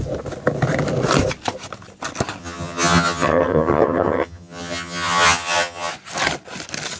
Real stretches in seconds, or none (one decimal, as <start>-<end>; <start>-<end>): 0.0-2.4; 5.9-7.0